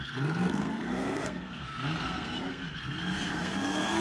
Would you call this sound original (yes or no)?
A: no